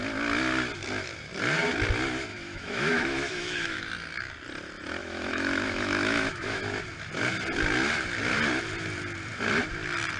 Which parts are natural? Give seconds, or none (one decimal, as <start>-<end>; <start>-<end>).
0.0-2.3; 3.8-5.0; 6.6-10.2